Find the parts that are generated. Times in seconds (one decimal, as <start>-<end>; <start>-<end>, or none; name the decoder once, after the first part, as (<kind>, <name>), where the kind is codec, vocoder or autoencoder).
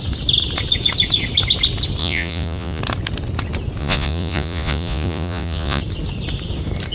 2.0-2.8 (vocoder, Vocos); 3.8-5.8